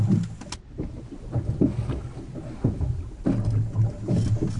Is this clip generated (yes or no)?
no